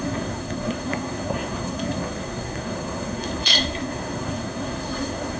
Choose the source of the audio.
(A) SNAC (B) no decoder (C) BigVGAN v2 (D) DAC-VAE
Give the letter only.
A